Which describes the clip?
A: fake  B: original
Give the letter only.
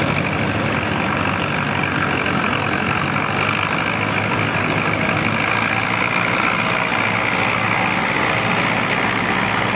B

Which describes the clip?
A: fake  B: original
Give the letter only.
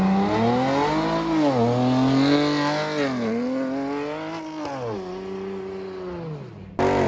B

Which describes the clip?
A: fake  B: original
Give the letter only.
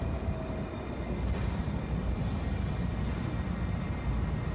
B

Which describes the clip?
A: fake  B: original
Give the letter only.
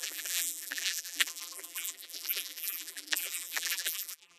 A